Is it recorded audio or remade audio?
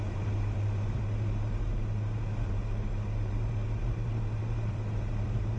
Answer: remade